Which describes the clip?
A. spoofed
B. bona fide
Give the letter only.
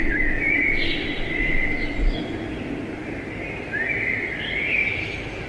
B